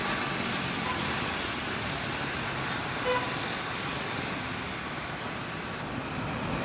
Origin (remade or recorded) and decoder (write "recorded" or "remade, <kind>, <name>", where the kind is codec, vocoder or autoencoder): recorded